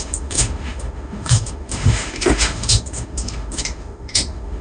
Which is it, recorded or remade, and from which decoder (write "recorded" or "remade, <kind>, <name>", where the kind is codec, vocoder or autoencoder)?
remade, autoencoder, DAC-VAE